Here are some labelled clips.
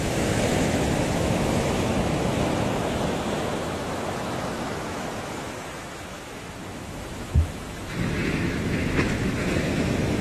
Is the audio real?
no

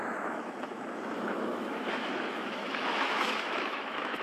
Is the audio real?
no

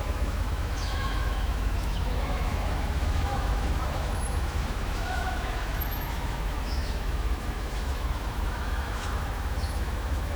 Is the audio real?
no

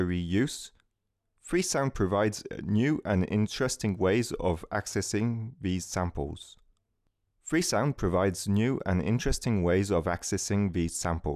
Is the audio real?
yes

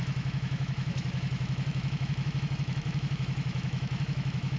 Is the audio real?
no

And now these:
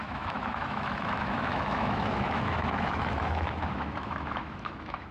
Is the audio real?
no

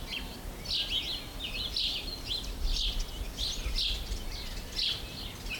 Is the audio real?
yes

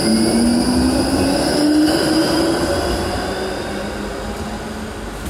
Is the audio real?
yes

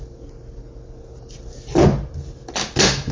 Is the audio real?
yes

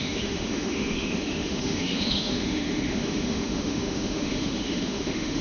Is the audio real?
no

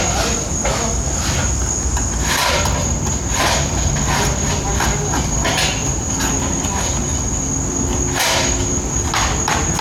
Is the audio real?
yes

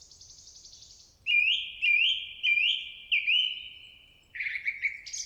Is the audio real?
yes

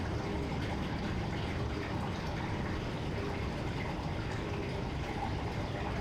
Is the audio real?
yes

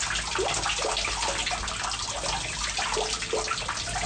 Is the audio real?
yes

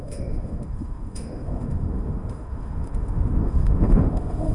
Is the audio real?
no